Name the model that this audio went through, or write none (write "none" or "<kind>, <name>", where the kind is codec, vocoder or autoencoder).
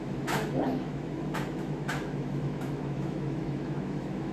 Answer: autoencoder, DAC-VAE